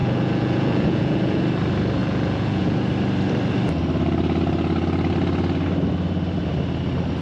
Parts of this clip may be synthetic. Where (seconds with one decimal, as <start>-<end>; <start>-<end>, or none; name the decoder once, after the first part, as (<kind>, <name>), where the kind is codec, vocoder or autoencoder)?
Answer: 0.0-1.4 (vocoder, Vocos); 2.0-2.8